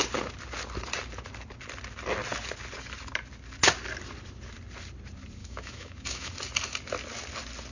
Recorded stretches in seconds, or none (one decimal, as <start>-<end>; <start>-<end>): 0.0-5.4; 6.3-7.7